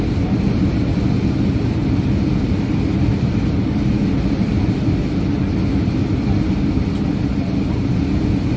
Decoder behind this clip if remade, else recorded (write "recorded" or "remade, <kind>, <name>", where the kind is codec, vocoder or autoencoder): recorded